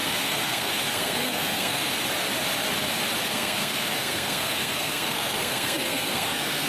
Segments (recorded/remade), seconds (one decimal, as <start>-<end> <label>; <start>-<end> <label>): 0.0-1.9 remade; 1.9-3.2 recorded; 3.2-6.7 remade